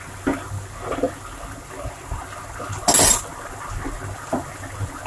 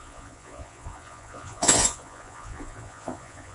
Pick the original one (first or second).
first